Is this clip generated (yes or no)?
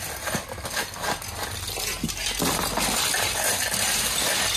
no